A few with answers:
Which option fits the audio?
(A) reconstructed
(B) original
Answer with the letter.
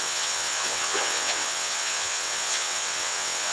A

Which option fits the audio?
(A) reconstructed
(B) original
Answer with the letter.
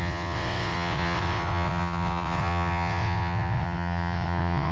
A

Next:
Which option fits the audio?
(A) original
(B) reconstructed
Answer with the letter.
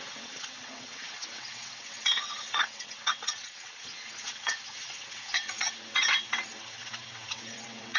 B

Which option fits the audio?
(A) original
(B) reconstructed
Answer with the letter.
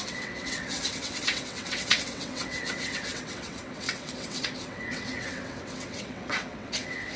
B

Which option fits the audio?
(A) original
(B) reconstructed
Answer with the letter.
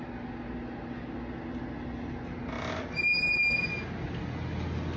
A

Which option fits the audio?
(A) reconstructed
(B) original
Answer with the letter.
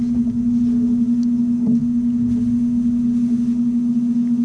B